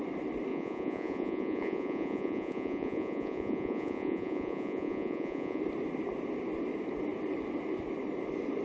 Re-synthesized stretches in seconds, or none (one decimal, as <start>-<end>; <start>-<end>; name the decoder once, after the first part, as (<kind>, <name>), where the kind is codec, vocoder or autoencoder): 0.5-5.6 (vocoder, Vocos)